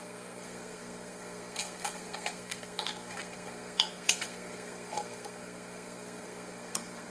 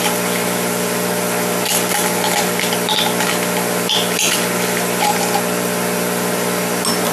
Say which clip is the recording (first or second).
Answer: second